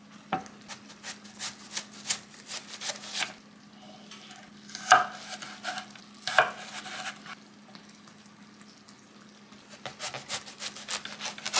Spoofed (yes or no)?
no